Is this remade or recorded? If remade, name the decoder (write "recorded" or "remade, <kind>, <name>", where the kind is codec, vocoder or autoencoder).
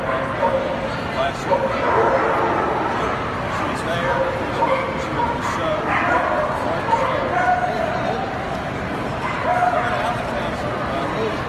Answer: recorded